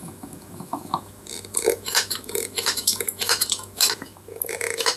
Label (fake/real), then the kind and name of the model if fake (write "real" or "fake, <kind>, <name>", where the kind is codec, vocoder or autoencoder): fake, autoencoder, DAC-VAE